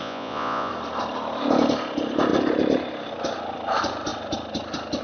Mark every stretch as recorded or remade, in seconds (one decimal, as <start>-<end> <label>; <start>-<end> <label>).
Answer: 0.0-0.7 remade; 0.7-5.0 recorded